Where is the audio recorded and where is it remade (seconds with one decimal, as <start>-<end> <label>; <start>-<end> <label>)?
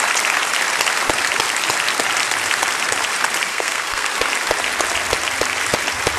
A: 0.0-3.5 recorded; 3.5-4.1 remade; 4.1-6.2 recorded